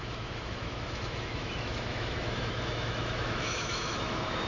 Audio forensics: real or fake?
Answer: fake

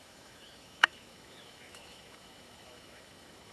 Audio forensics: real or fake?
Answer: fake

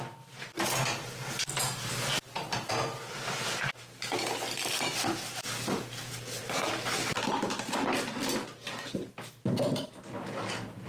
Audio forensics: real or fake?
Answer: real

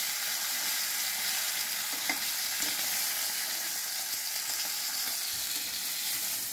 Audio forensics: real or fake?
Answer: real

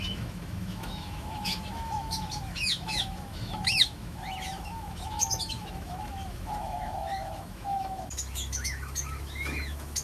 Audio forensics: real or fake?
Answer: fake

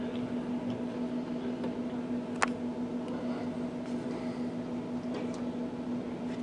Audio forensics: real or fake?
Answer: real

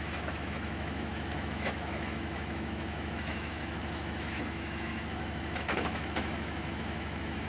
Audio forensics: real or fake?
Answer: fake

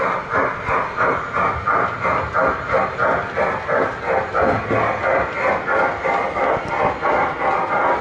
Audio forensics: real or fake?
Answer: real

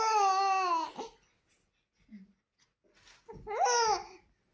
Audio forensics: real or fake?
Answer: real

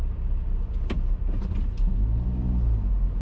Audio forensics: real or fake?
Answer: real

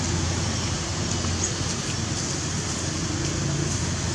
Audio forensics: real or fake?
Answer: real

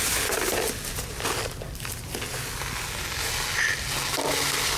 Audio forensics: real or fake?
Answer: real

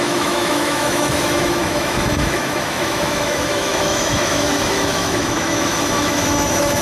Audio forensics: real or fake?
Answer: fake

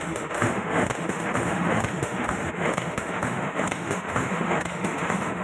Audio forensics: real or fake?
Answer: fake